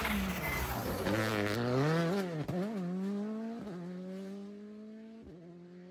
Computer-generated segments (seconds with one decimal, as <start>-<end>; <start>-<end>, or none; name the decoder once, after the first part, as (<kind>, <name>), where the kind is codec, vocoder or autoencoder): none